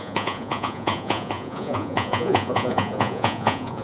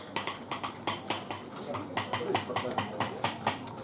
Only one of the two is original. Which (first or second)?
second